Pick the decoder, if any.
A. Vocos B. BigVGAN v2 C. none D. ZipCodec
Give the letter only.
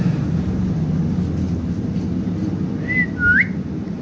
C